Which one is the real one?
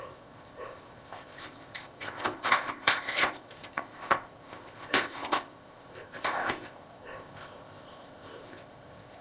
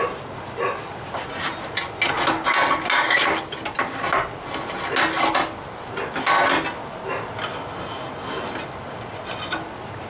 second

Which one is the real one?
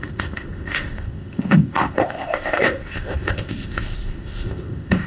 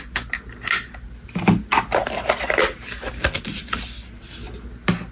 second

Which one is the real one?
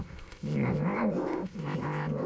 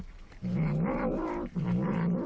second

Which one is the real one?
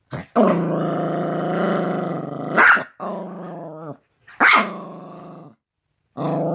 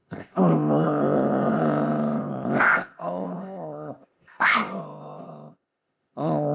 first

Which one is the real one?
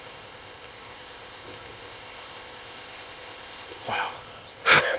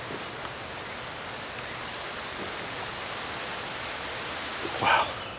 second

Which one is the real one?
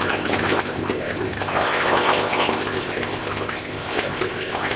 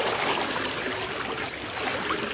second